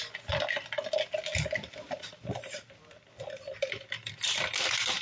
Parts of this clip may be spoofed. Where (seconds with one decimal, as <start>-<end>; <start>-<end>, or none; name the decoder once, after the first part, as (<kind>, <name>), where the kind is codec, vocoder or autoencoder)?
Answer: none